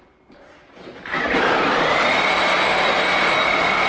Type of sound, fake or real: fake